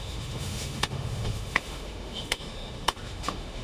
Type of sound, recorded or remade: remade